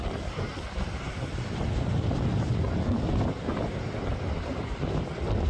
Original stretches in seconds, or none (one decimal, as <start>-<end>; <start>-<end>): 0.0-0.5; 1.3-4.1; 4.8-5.5